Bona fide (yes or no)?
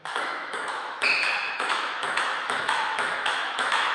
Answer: no